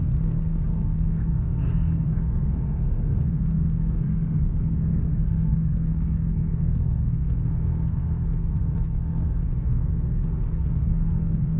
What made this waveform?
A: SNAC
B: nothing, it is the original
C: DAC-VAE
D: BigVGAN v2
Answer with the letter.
A